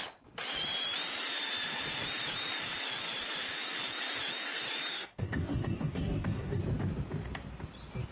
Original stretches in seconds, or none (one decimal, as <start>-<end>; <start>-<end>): 0.0-4.9; 6.6-8.1